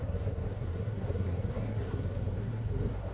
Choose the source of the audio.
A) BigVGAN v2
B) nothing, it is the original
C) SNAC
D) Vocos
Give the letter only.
C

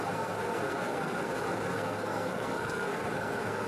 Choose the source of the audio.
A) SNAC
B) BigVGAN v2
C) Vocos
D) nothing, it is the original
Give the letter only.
A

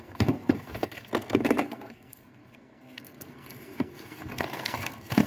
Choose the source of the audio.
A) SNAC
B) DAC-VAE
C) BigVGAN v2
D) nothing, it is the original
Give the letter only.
A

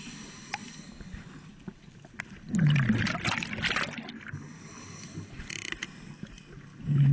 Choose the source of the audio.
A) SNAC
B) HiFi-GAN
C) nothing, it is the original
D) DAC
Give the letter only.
C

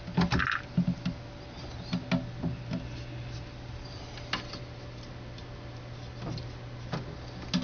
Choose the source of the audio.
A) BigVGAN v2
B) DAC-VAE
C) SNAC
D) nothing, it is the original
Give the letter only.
D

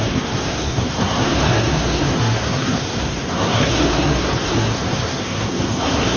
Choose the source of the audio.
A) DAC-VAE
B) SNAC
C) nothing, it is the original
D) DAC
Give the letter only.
B